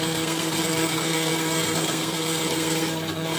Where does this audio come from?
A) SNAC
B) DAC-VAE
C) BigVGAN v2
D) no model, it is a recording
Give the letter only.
A